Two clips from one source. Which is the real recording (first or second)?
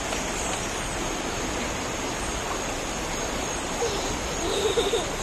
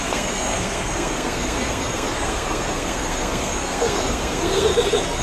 first